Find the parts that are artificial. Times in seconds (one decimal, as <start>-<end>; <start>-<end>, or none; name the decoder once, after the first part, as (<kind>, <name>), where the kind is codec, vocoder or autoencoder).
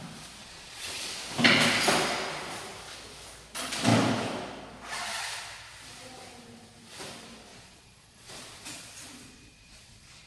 0.4-1.1 (vocoder, Vocos); 7.5-10.3